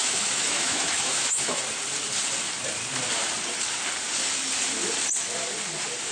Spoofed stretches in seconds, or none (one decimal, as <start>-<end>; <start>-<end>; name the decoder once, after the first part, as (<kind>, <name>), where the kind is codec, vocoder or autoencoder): 0.0-1.6 (autoencoder, DAC-VAE)